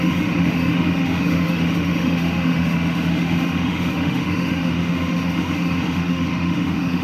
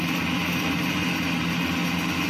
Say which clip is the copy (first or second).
first